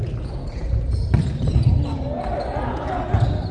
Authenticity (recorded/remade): recorded